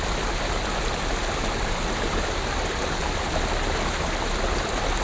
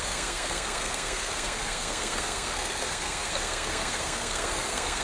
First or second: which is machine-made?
second